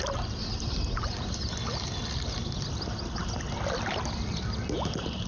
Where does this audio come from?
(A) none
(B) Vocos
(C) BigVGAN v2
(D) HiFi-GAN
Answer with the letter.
A